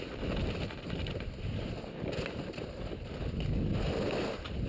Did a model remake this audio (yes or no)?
no